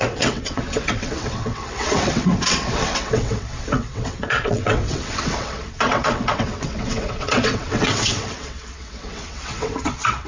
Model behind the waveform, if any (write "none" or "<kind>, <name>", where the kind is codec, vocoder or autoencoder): vocoder, WaveNeXt